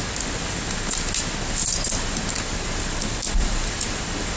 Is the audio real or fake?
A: real